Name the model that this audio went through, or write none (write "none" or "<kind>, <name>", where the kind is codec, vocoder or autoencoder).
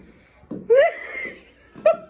vocoder, BigVGAN v2